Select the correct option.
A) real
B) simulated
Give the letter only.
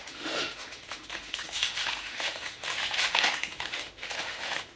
B